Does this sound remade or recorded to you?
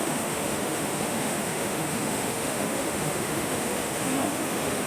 remade